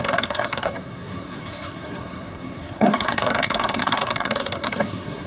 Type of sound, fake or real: fake